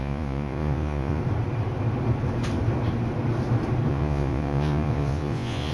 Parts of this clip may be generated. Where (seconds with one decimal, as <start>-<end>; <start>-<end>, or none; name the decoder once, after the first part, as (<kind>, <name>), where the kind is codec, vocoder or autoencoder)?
0.0-1.2 (vocoder, Vocos); 3.9-5.7

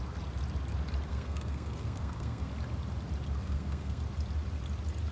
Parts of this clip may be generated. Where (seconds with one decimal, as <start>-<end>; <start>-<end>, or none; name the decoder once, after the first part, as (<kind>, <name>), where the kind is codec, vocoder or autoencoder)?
1.1-2.5 (codec, SNAC); 3.4-4.0

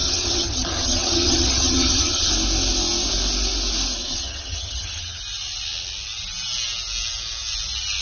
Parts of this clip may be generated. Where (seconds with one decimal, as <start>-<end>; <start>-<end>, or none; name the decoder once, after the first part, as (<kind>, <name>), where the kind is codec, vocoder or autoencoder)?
0.0-2.3 (vocoder, HiFi-GAN); 4.0-5.2

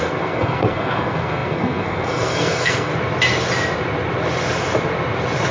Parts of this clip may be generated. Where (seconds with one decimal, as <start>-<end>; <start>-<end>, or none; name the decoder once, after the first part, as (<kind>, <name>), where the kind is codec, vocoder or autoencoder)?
0.0-2.9 (codec, SNAC)

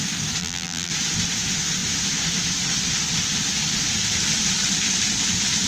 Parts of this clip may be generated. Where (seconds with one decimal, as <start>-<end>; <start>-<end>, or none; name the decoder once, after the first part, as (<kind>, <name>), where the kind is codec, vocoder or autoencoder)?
0.4-0.9 (vocoder, BigVGAN v2)

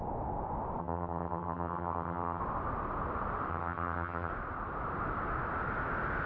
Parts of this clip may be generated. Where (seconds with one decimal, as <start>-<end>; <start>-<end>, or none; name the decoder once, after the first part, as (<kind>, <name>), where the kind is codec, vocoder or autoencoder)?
0.8-2.4 (vocoder, HiFi-GAN); 3.5-4.3